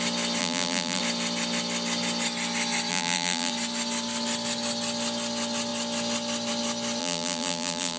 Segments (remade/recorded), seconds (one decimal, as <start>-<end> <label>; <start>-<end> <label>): 0.0-0.4 recorded; 0.4-1.0 remade; 1.0-2.9 recorded; 2.9-3.5 remade; 3.5-7.0 recorded; 7.0-8.0 remade